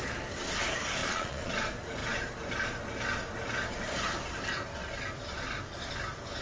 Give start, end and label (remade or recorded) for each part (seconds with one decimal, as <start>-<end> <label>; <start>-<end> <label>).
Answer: 0.0-1.0 recorded; 1.0-1.5 remade; 1.5-6.4 recorded